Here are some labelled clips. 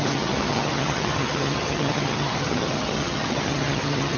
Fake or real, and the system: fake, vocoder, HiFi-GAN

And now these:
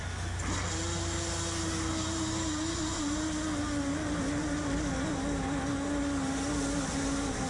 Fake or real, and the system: real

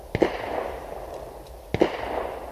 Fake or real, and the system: real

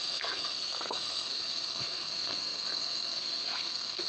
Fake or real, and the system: fake, codec, SNAC